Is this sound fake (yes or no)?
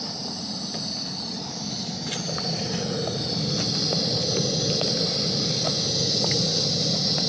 no